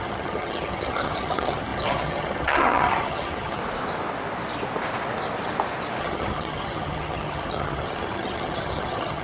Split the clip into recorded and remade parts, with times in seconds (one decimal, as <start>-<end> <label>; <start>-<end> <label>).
0.0-3.6 remade; 3.6-6.0 recorded; 6.0-9.2 remade